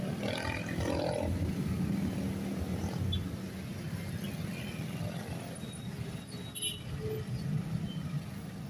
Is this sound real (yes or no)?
yes